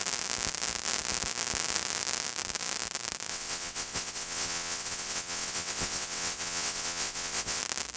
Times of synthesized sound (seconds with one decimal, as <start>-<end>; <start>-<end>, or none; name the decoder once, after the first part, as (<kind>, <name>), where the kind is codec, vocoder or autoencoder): 3.3-7.6 (vocoder, WaveNeXt)